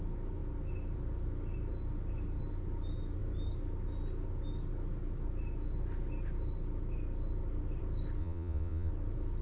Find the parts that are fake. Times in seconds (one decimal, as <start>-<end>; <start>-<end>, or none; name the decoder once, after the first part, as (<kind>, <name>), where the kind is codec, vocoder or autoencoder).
8.2-8.9 (vocoder, Vocos)